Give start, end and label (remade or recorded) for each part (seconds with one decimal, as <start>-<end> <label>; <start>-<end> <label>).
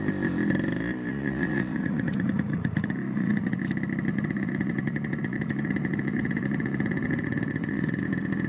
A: 0.0-1.1 recorded; 1.1-3.6 remade; 3.6-4.1 recorded; 4.1-8.0 remade; 8.0-8.5 recorded